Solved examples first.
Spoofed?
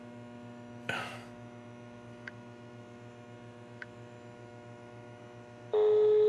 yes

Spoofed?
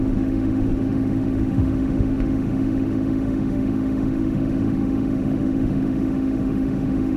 yes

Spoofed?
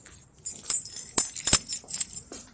no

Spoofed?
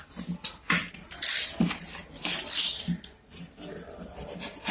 no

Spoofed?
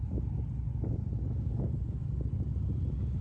no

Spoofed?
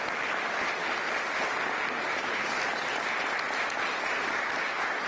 no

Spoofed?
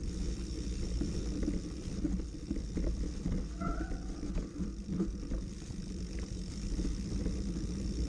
no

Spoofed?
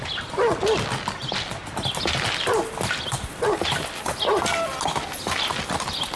no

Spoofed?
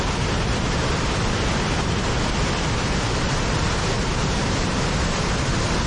no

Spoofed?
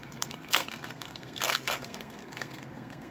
yes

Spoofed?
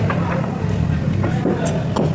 no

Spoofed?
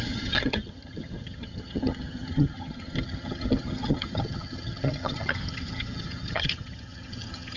yes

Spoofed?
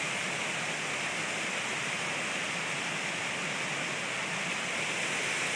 no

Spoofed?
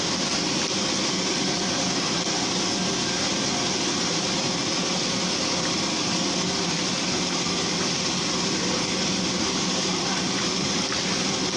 no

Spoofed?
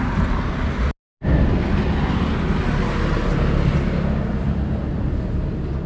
no